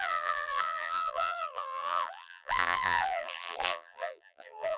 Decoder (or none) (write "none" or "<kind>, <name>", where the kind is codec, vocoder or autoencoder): vocoder, BigVGAN v2